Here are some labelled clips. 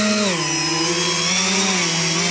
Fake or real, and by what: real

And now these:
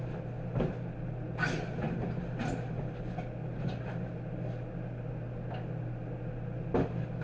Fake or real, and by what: real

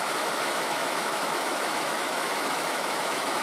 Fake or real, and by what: fake, autoencoder, DAC-VAE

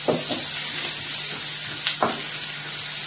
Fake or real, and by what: real